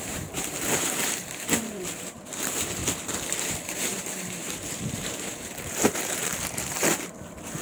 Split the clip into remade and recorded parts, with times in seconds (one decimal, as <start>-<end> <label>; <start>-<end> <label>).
0.0-7.6 remade